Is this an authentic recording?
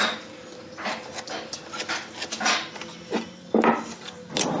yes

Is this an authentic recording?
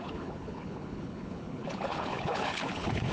no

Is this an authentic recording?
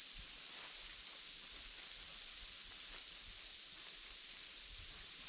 yes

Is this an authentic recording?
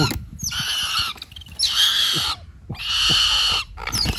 yes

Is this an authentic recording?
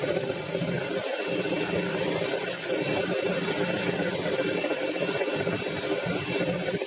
yes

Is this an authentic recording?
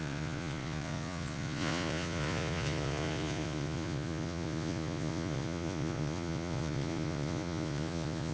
no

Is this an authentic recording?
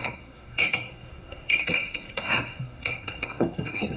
no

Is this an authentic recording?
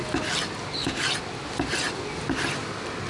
yes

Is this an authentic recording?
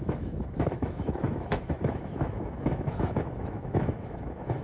no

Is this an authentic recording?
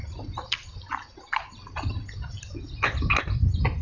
yes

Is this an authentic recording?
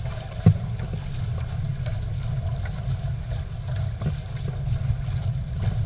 yes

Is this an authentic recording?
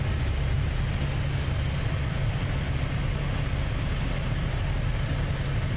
yes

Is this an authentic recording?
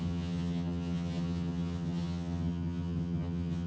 no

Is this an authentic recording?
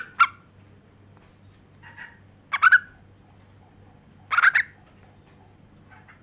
yes